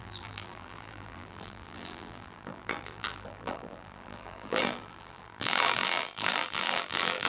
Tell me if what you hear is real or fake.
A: fake